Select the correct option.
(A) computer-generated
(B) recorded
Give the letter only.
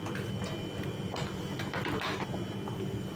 B